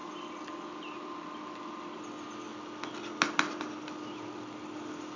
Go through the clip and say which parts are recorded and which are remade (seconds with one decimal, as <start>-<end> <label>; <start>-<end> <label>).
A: 0.0-5.2 recorded